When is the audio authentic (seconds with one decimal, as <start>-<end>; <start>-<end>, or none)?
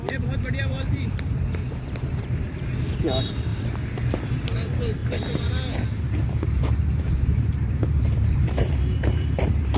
3.5-4.3; 5.0-6.0